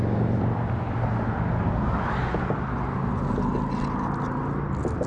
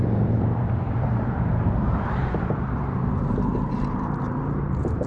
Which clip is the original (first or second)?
first